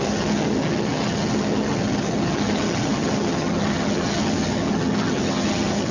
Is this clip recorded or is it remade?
remade